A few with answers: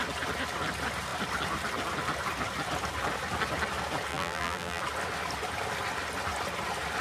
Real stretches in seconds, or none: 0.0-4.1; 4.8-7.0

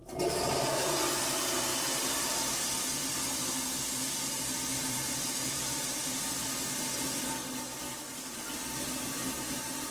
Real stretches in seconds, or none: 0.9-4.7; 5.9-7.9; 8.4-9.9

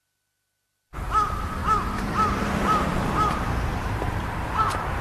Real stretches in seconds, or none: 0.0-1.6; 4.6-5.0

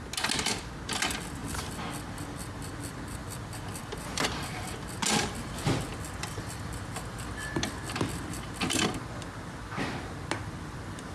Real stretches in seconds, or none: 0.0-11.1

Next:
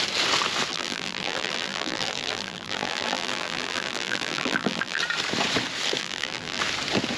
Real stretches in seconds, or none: 0.0-0.7; 5.0-6.0; 6.6-7.2

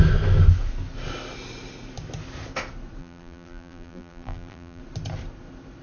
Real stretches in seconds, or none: 0.0-3.0; 4.8-5.8

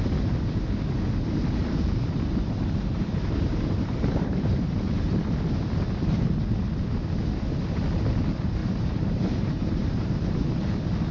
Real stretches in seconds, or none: 0.0-1.6; 4.8-8.6; 10.5-11.1

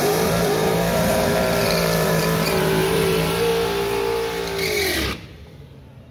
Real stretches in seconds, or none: 3.5-6.1